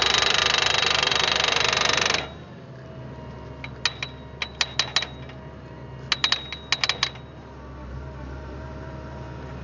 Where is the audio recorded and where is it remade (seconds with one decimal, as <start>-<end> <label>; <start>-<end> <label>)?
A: 0.0-9.6 recorded